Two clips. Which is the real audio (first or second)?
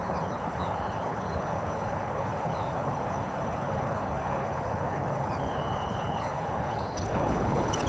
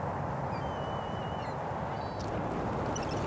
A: second